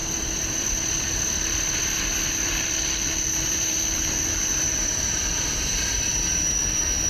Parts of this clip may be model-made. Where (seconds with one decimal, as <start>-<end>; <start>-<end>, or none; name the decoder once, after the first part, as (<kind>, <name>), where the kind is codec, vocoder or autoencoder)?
0.0-7.1 (vocoder, BigVGAN v2)